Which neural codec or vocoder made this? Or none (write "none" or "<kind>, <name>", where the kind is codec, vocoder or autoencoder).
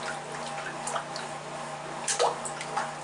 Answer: none